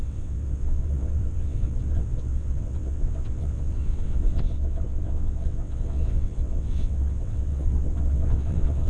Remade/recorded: remade